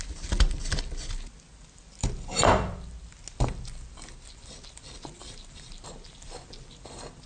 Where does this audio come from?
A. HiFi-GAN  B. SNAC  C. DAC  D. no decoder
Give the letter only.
D